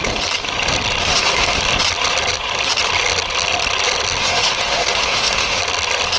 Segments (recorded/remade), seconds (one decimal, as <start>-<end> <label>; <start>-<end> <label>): 0.0-1.0 recorded; 1.0-1.6 remade; 1.6-4.2 recorded; 4.2-5.6 remade; 5.6-6.2 recorded